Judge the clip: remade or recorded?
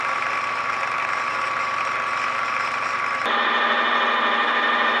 recorded